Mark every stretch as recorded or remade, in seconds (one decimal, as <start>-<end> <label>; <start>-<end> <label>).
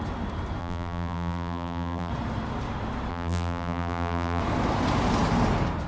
0.0-0.6 recorded; 0.6-2.1 remade; 2.1-3.1 recorded; 3.1-4.4 remade; 4.4-5.9 recorded